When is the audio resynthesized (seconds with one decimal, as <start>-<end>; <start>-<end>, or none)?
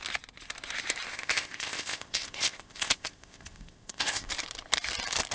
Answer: 1.1-4.3